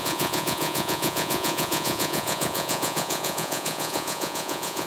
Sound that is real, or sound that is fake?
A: fake